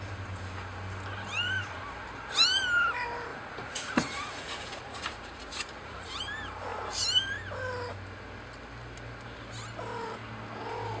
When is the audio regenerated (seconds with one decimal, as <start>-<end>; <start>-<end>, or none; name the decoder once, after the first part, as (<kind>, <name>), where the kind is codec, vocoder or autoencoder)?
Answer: 3.3-6.1 (vocoder, Vocos)